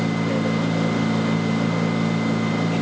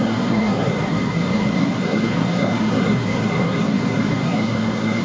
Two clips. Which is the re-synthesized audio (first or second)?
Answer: second